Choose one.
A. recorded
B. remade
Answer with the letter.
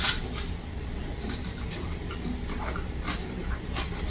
A